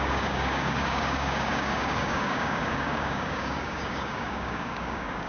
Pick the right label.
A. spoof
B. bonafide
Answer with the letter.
A